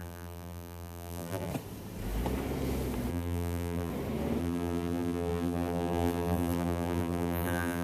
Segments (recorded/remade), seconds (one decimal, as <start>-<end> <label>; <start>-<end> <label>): 0.0-1.5 remade; 1.5-3.1 recorded; 3.1-3.9 remade; 3.9-4.4 recorded; 4.4-7.8 remade